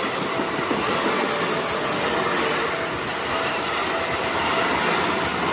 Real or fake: real